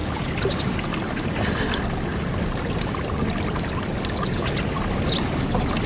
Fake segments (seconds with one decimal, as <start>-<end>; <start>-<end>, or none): 2.1-2.9